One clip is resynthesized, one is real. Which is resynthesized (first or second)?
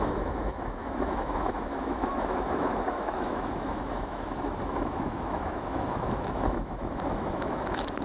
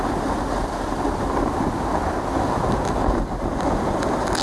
first